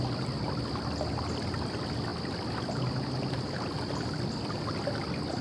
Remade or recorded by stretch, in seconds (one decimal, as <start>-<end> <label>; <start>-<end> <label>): 0.0-5.4 recorded